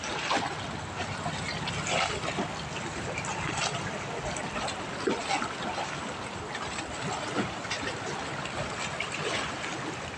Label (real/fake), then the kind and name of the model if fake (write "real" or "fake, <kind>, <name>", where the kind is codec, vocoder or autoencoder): real